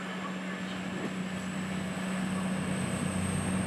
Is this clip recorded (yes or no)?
yes